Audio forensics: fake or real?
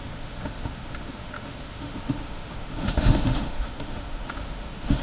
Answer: fake